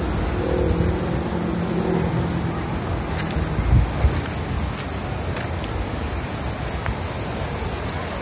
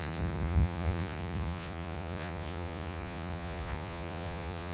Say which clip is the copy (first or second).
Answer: second